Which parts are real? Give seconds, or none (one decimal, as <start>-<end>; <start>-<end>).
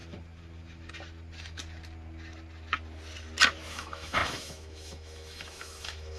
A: 0.0-3.7